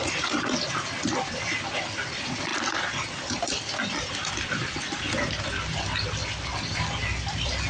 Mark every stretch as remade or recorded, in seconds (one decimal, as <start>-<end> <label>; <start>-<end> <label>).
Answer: 0.0-7.7 recorded